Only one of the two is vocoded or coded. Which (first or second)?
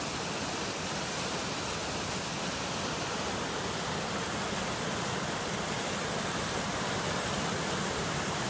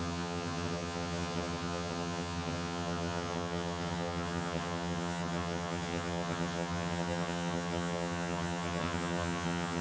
second